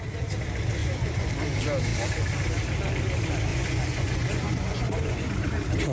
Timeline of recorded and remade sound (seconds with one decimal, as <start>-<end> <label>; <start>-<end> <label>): 0.0-0.8 recorded; 0.8-1.3 remade; 1.3-3.5 recorded; 3.5-5.3 remade; 5.3-5.9 recorded